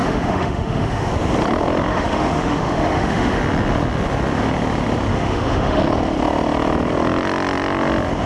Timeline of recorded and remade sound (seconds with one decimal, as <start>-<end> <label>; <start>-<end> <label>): 0.0-1.1 remade; 1.1-1.9 recorded; 1.9-3.4 remade; 3.4-5.1 recorded; 5.1-5.8 remade; 5.8-8.3 recorded